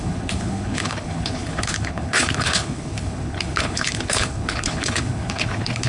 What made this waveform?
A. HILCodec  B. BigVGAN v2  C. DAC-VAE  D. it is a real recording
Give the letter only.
A